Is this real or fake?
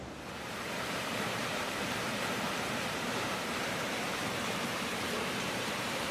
fake